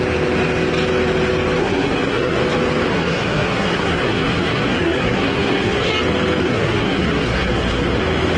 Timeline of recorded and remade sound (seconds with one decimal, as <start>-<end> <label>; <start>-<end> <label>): 0.0-1.6 recorded; 1.6-2.4 remade; 2.4-2.9 recorded; 2.9-5.9 remade; 5.9-6.4 recorded; 6.4-8.0 remade; 8.0-8.4 recorded